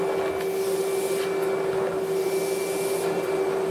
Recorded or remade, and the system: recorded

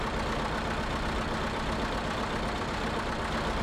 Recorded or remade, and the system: recorded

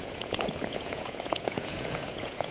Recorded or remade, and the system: remade, vocoder, Vocos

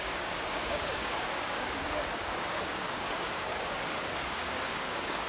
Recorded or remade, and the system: remade, codec, DAC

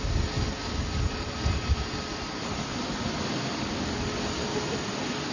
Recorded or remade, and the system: recorded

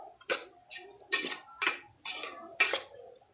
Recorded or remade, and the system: recorded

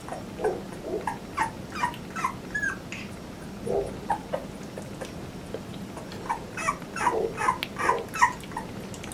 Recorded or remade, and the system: recorded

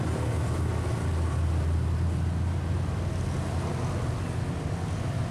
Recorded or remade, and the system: recorded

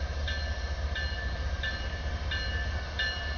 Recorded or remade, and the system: recorded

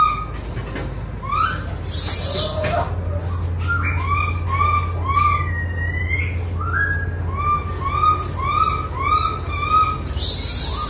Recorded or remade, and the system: recorded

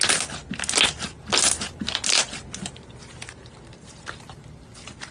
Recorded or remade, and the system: recorded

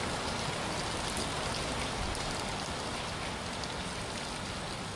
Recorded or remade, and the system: recorded